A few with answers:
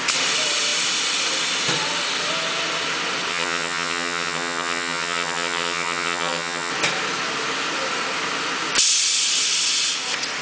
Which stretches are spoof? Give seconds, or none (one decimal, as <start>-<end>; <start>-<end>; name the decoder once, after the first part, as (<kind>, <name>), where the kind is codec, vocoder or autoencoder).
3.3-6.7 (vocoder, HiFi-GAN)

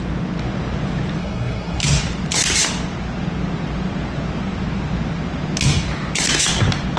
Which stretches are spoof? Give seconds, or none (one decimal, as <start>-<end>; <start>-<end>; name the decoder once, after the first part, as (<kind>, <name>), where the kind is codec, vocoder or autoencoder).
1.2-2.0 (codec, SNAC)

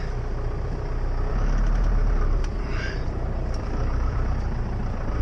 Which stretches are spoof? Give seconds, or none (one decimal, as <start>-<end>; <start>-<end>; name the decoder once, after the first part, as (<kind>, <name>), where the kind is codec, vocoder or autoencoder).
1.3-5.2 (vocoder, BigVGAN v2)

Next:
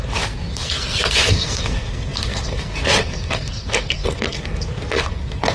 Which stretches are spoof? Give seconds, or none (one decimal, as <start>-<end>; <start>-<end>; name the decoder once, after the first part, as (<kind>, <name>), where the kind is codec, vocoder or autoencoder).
0.0-5.5 (codec, SNAC)

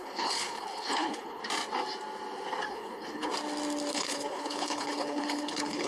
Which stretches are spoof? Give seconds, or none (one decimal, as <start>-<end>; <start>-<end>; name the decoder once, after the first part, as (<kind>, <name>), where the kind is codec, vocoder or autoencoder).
0.0-1.4 (codec, HILCodec); 2.7-3.3; 3.9-5.9